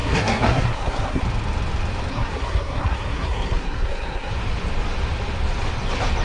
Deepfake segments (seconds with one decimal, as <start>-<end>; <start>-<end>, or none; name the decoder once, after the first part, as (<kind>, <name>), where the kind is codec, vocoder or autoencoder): 0.0-1.2 (codec, SNAC); 2.1-4.3